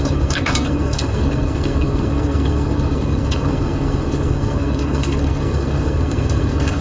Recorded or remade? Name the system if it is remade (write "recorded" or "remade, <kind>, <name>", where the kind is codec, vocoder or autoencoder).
remade, codec, SNAC